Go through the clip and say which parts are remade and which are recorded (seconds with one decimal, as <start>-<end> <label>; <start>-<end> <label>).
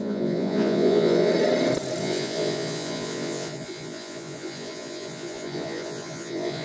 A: 0.0-1.3 remade; 1.3-2.0 recorded; 2.0-6.6 remade